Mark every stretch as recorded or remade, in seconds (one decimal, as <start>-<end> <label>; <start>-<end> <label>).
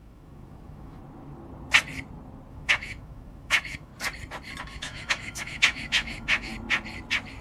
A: 0.0-1.0 remade; 1.0-2.5 recorded; 2.5-3.9 remade; 3.9-4.6 recorded; 4.6-6.5 remade; 6.5-7.4 recorded